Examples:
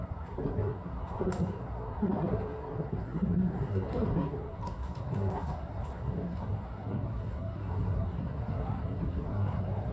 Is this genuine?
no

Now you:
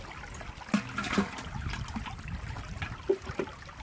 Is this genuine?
yes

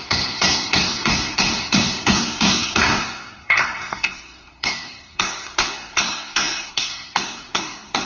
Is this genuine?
no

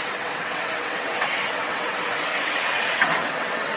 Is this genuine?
no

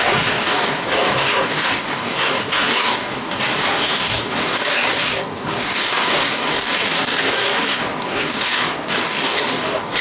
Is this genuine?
no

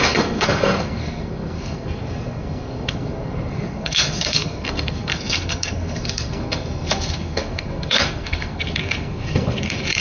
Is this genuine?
no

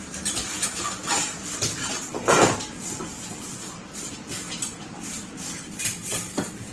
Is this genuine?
no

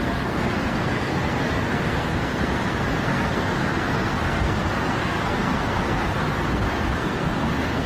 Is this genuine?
no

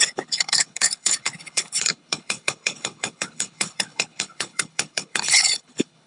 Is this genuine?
no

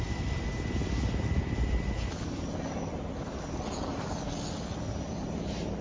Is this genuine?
yes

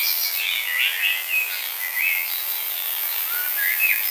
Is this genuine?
no